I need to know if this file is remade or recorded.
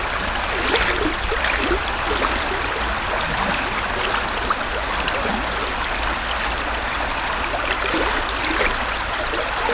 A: recorded